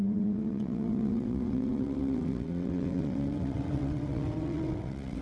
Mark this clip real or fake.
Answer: fake